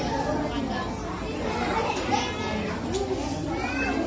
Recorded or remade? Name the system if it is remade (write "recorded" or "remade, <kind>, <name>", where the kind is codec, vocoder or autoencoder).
recorded